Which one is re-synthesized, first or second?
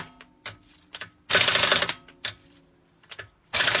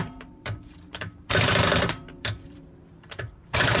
second